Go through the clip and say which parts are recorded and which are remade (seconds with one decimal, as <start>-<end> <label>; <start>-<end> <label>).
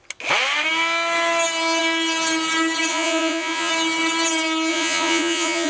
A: 0.0-2.9 recorded; 2.9-3.7 remade; 3.7-4.7 recorded; 4.7-5.7 remade